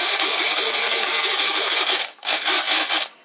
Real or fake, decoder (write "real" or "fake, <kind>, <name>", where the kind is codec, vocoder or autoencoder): fake, codec, SNAC